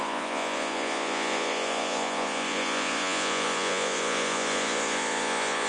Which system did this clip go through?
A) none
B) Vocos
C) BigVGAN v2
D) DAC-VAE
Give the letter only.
B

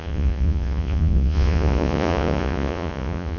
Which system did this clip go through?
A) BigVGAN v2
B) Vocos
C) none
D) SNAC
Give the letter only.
B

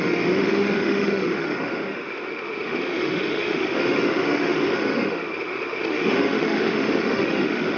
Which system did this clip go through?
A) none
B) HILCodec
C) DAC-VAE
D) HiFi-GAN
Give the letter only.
C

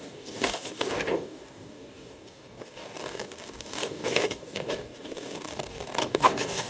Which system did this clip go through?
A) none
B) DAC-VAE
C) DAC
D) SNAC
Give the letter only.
C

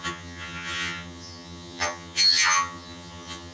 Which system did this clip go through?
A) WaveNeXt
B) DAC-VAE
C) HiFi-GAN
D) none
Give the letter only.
C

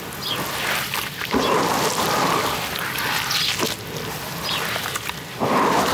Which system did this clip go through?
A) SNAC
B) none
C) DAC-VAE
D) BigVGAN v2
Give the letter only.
B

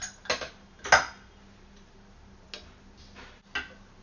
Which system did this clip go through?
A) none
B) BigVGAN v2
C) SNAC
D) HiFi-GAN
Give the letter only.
A